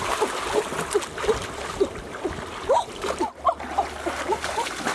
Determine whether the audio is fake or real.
real